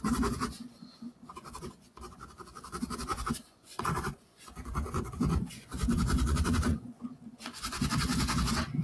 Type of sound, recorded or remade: remade